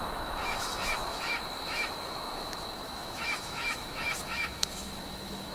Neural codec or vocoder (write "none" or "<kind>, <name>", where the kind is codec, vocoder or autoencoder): autoencoder, DAC-VAE